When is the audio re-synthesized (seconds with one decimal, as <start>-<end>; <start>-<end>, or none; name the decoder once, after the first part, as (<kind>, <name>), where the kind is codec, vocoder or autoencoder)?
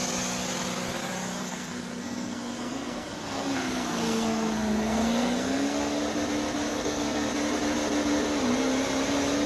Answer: 1.4-6.0 (codec, SNAC); 6.7-7.3